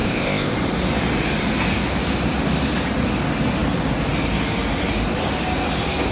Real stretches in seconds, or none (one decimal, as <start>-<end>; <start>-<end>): 0.5-6.1